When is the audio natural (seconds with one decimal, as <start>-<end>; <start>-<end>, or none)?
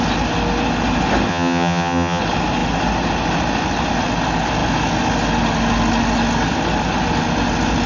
0.0-1.3; 2.2-7.9